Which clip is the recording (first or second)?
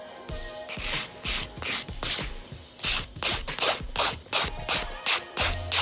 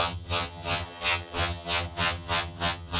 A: first